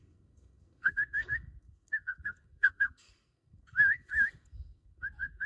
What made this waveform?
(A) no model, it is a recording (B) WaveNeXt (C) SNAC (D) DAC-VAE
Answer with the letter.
C